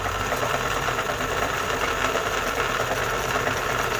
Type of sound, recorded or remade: remade